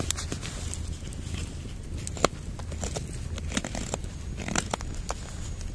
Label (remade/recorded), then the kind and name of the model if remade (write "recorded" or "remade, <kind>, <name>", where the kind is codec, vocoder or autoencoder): recorded